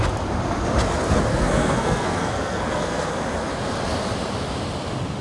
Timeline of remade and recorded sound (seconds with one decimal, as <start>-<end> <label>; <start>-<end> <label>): 0.0-1.3 recorded; 1.3-3.1 remade; 3.1-5.2 recorded